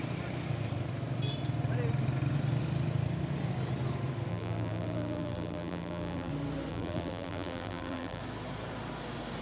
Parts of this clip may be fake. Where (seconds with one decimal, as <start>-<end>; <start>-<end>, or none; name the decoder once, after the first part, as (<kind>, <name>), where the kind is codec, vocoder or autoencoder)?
4.3-6.3 (vocoder, BigVGAN v2); 6.7-8.2